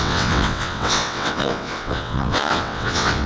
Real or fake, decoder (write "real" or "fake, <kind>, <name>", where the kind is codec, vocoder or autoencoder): fake, vocoder, WaveNeXt